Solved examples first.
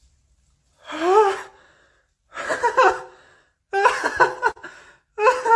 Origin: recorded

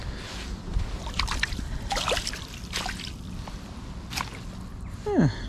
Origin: recorded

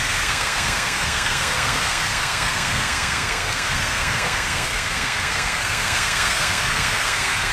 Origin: remade